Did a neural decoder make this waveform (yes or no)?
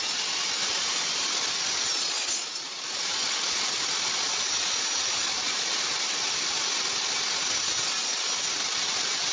no